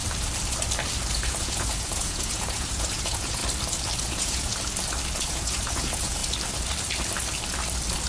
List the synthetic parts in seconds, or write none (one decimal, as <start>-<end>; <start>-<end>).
1.1-3.4; 4.0-4.5; 5.3-6.2